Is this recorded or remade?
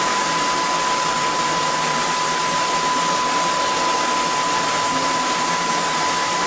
recorded